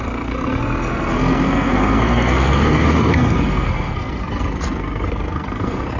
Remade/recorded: remade